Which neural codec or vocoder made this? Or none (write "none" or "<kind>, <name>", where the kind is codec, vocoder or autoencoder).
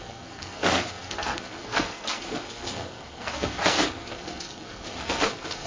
codec, SNAC